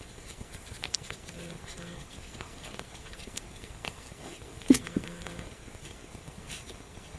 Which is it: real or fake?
fake